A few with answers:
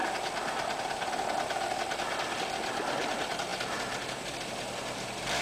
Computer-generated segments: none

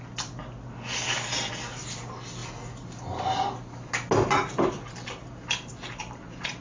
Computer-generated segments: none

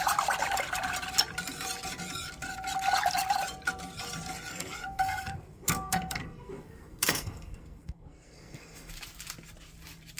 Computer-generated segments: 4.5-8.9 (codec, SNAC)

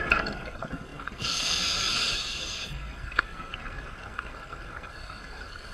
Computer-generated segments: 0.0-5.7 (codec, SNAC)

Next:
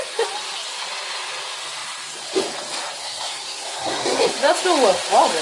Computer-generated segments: 3.0-4.3 (codec, SNAC)

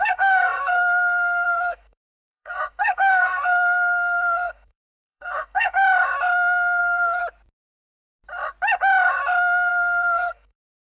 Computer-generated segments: 0.0-5.8 (codec, SNAC); 6.8-7.2; 9.7-10.9

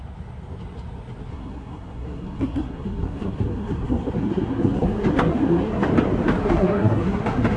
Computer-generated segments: 1.3-5.9 (codec, SNAC); 6.4-7.6

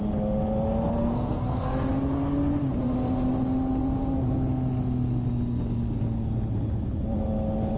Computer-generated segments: 1.0-1.6 (codec, SNAC)